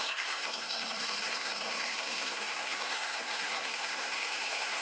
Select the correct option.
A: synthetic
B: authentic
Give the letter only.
A